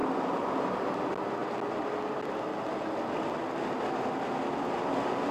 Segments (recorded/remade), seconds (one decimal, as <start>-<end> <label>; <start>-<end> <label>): 0.0-5.3 recorded